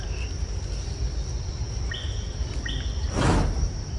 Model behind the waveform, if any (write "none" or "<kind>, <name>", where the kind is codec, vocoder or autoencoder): none